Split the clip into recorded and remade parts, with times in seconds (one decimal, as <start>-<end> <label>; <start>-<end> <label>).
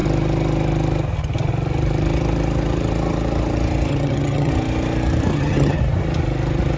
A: 0.0-3.9 recorded; 3.9-4.5 remade; 4.5-5.3 recorded; 5.3-5.8 remade; 5.8-6.8 recorded